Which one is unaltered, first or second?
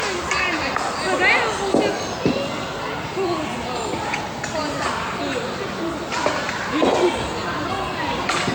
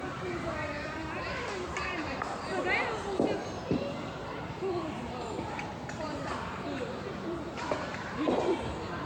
first